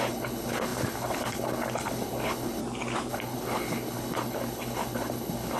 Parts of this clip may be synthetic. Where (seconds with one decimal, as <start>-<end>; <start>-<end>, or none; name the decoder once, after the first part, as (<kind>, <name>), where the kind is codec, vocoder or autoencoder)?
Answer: 0.0-2.6 (codec, HILCodec); 3.1-5.6